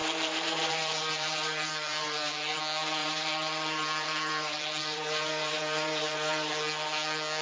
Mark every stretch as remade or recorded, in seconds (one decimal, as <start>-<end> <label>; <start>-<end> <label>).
0.0-2.6 remade; 2.6-3.0 recorded; 3.0-6.5 remade; 6.5-7.4 recorded